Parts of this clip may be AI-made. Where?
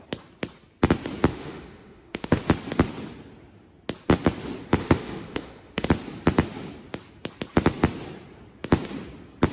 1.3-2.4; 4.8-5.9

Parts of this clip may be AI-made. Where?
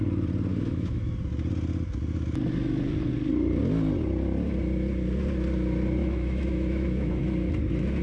0.5-1.1; 6.0-7.2